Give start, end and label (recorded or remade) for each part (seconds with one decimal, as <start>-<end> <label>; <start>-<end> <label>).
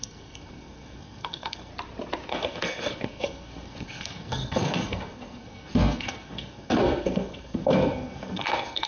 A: 0.0-1.7 remade; 1.7-2.3 recorded; 2.3-8.9 remade